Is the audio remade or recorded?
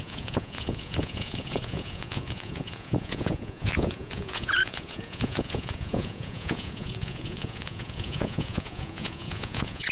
remade